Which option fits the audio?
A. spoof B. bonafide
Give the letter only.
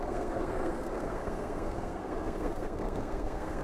A